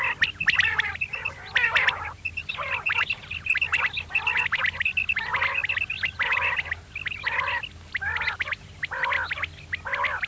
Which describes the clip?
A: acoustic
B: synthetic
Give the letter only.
A